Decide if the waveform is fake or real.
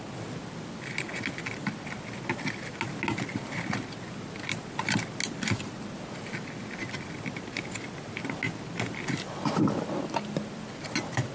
real